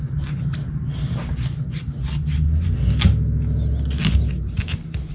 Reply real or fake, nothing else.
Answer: real